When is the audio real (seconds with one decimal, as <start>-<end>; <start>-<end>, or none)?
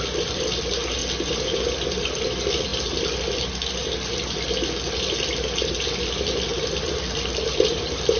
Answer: 1.0-1.7; 2.7-6.6